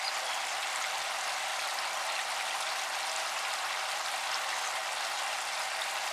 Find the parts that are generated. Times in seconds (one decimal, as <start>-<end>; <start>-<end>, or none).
none